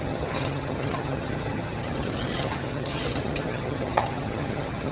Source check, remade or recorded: remade